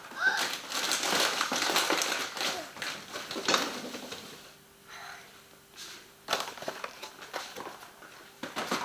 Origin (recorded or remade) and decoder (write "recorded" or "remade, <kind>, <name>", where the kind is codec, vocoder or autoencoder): recorded